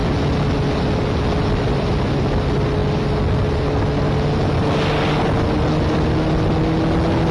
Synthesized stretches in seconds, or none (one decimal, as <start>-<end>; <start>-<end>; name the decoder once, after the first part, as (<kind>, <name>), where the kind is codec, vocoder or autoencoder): none